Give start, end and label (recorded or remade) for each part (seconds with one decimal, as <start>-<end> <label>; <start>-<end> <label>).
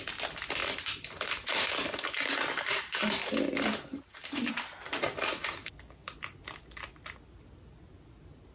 0.0-8.5 recorded